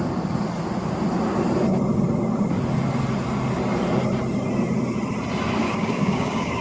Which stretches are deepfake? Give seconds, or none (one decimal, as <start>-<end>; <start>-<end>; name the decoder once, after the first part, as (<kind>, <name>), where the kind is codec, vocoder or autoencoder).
5.6-6.6 (codec, DAC)